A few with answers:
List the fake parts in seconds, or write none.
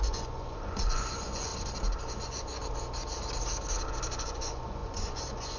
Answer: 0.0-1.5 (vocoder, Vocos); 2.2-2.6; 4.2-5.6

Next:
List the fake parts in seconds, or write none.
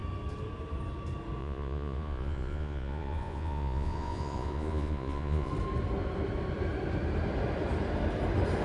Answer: 1.4-5.5 (vocoder, Vocos)